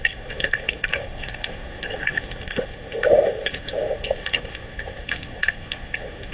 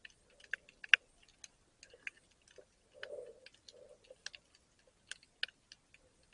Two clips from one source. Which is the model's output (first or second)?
first